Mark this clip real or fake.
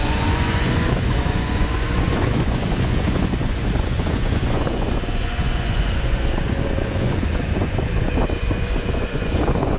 fake